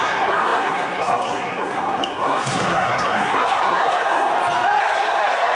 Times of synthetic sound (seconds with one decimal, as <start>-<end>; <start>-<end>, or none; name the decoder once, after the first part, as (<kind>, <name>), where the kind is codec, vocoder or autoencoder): 0.0-4.3 (codec, SNAC); 4.8-5.5